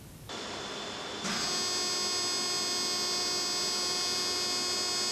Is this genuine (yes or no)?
yes